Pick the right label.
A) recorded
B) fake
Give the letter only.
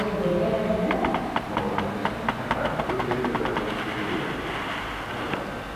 A